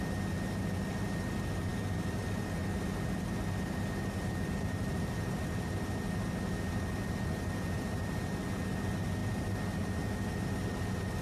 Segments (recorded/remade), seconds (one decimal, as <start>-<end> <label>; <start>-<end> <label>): 0.0-11.2 recorded